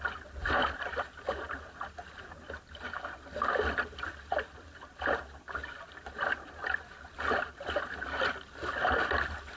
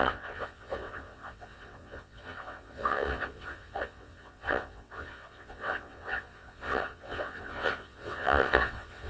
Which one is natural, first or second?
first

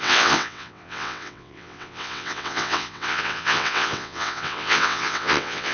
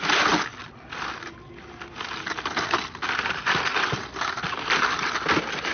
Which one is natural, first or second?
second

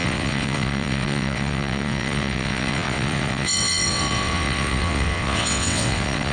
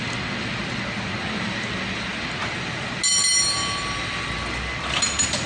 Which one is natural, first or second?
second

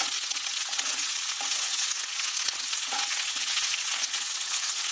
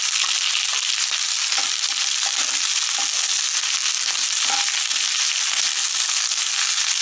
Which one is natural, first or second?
second